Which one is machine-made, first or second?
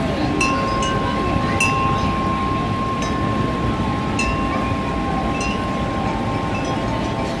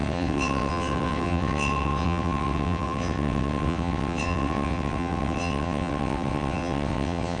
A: second